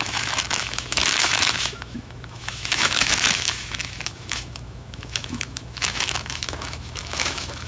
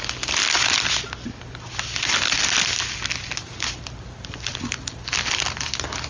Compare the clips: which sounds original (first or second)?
second